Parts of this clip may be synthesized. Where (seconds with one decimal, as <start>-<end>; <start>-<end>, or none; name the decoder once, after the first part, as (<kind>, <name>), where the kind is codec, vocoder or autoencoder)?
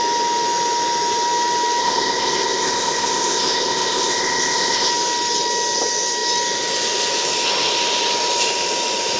1.8-4.9 (codec, ZipCodec)